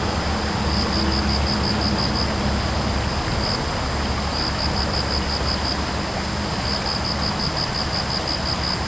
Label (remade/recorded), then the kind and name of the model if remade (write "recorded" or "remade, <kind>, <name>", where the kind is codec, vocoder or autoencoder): recorded